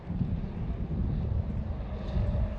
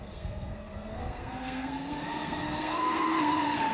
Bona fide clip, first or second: first